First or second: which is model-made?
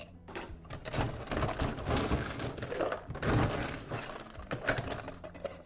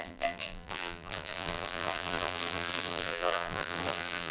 second